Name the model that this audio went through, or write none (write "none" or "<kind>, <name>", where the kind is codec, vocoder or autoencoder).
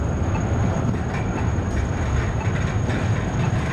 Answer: none